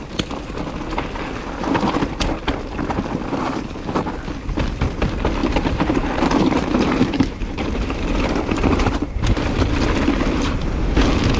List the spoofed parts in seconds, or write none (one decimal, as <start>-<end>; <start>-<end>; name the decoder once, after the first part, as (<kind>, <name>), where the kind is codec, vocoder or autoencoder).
5.4-9.7 (vocoder, BigVGAN v2)

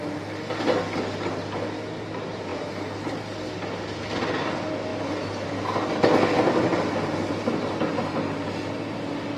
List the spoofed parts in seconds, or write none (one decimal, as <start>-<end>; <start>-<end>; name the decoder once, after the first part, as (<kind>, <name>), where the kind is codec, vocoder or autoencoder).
none